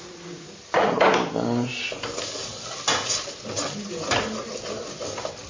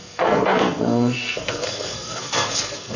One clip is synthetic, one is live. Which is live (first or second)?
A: first